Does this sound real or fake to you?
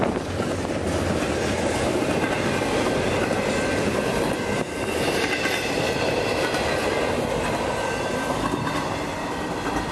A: real